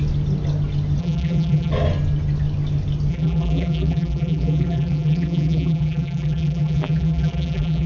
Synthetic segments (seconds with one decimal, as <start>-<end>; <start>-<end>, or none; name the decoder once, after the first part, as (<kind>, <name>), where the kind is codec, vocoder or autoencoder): 1.0-1.7 (vocoder, BigVGAN v2); 3.1-7.9